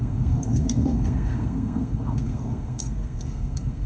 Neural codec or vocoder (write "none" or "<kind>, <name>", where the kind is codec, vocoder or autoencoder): codec, SNAC